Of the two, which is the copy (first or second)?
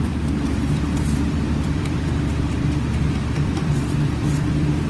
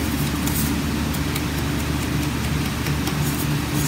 first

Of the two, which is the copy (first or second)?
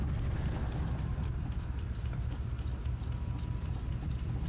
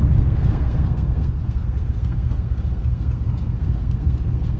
second